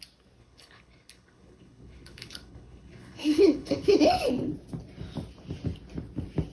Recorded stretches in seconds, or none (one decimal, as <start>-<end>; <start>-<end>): 0.0-0.4; 4.3-6.5